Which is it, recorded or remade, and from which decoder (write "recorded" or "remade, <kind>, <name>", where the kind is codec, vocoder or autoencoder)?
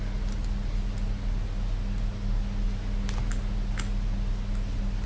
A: recorded